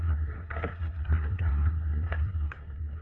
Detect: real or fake fake